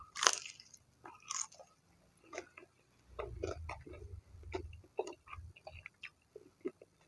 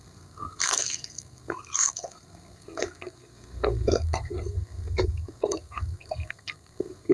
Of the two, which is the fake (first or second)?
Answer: second